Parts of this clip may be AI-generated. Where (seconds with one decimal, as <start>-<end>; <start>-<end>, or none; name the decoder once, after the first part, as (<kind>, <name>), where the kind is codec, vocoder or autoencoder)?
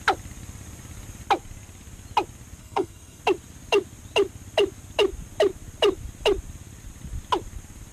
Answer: 2.6-3.2 (codec, SNAC)